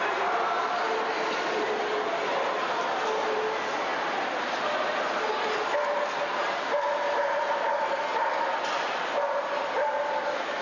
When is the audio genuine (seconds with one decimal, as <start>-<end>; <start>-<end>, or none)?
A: 0.0-10.6